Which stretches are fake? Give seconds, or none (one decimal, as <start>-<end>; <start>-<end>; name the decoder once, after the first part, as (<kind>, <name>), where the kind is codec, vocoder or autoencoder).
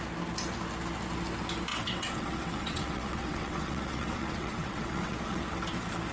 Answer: 1.7-5.4 (vocoder, WaveNeXt)